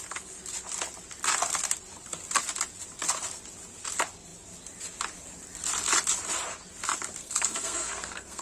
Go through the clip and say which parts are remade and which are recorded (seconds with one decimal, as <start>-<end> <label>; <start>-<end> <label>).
0.0-7.2 recorded; 7.2-8.4 remade